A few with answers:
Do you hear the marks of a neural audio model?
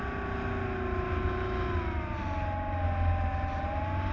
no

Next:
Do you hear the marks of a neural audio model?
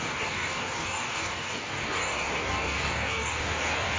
yes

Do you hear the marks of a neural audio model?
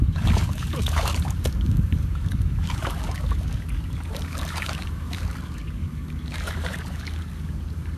yes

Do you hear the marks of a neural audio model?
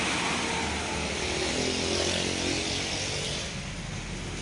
no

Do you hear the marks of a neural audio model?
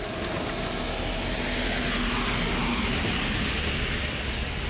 no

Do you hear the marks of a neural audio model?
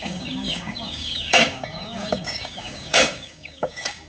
yes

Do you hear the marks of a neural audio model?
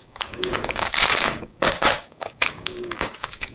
yes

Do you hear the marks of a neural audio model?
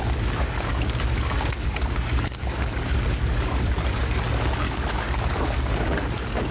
yes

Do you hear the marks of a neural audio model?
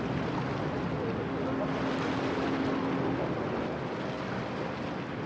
no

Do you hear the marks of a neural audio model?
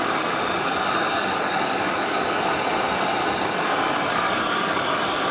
yes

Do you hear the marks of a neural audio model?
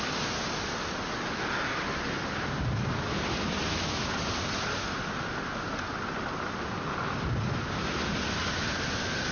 no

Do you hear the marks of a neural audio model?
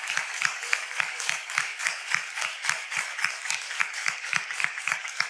yes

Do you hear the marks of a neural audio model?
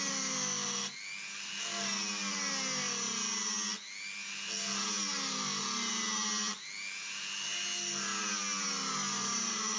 no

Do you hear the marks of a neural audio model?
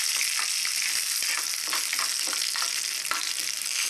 no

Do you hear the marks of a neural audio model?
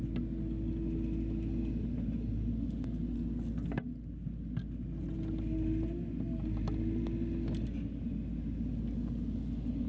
no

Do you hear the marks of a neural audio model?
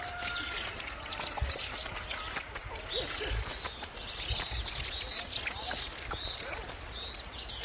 no